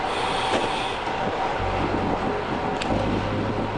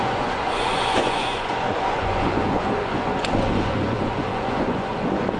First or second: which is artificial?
second